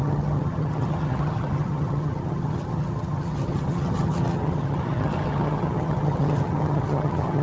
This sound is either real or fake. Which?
fake